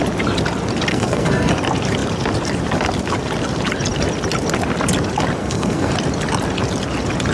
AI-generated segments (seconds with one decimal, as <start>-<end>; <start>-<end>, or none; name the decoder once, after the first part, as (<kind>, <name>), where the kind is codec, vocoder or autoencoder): 0.9-1.5 (codec, SNAC); 5.4-5.9